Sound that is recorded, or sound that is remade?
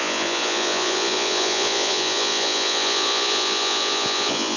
remade